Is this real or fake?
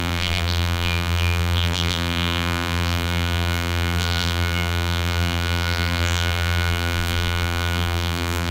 fake